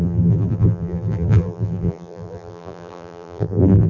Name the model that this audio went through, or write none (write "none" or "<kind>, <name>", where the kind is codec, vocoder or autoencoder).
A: vocoder, BigVGAN v2